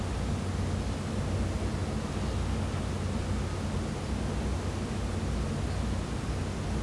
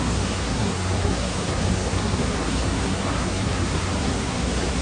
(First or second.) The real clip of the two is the first